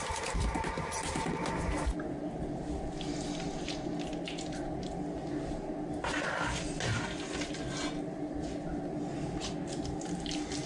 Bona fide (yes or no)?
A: yes